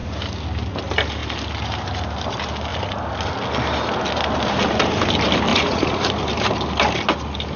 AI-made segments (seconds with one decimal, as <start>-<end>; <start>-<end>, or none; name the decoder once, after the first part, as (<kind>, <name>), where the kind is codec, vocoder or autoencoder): 5.5-6.1 (vocoder, Vocos)